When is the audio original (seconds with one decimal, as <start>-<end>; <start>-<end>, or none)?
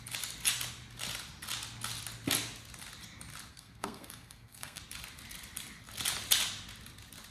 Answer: 0.0-3.5; 4.8-7.3